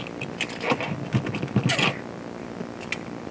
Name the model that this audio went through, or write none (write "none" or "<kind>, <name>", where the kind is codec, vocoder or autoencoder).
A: none